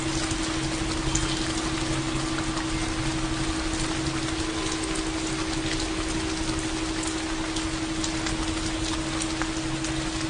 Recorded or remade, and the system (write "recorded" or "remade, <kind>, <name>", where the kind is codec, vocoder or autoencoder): recorded